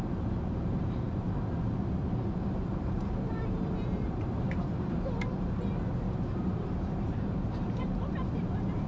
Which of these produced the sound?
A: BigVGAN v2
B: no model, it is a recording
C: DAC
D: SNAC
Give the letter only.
A